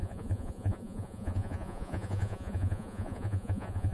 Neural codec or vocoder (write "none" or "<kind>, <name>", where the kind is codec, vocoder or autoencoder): vocoder, Vocos